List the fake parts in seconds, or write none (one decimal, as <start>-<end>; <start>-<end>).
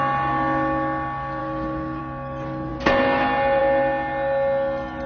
1.4-2.0